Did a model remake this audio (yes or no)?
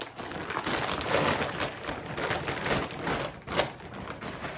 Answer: no